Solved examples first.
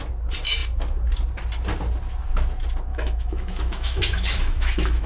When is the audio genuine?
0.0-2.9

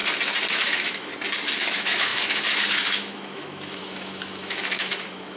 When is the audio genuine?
0.0-0.5; 1.1-1.6